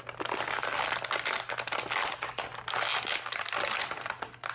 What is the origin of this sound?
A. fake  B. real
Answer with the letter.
B